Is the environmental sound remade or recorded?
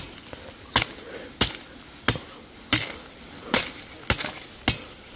recorded